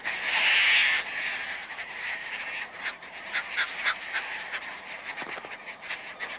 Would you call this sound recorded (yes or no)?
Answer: yes